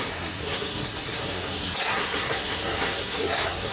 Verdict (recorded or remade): remade